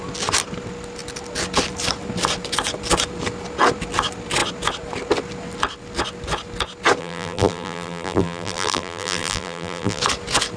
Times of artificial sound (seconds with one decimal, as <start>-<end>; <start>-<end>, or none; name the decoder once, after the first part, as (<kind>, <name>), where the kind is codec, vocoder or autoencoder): 7.0-10.0 (vocoder, BigVGAN v2)